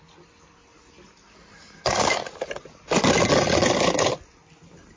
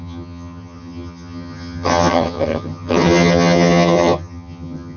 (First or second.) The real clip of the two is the first